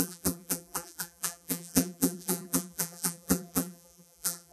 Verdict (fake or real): fake